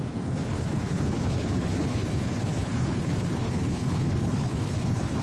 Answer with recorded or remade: remade